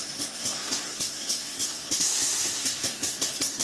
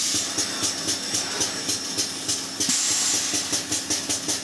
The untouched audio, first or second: second